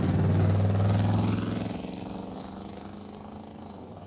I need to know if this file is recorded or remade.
recorded